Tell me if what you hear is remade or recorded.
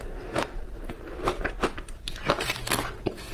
remade